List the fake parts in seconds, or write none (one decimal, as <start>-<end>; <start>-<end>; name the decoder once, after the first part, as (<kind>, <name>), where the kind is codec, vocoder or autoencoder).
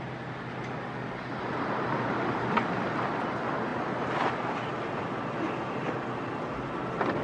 none